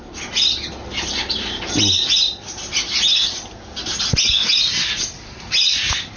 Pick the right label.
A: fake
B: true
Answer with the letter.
B